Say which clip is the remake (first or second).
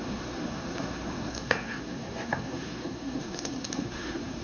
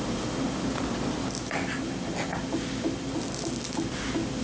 first